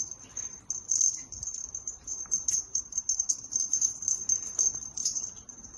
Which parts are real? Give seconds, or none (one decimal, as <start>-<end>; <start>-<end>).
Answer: 0.0-1.6; 3.9-5.0